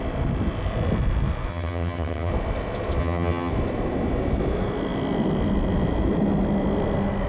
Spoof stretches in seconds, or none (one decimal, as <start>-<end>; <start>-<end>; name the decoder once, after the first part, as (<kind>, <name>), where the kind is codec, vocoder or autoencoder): 1.5-2.3 (vocoder, HiFi-GAN); 3.0-3.5